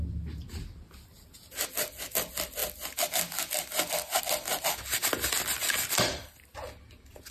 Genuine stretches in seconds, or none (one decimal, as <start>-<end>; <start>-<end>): 0.0-7.3